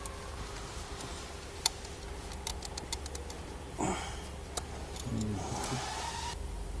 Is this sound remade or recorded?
recorded